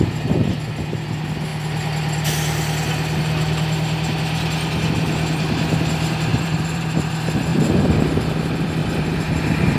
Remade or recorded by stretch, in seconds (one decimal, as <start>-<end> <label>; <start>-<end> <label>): 0.0-6.3 recorded; 6.3-7.1 remade; 7.1-7.5 recorded; 7.5-8.1 remade; 8.1-8.8 recorded; 8.8-9.4 remade; 9.4-9.8 recorded